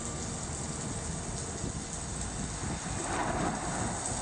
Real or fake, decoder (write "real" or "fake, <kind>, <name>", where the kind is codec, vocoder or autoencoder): real